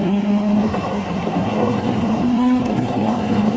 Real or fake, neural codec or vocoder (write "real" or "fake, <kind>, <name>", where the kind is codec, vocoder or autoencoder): fake, codec, SNAC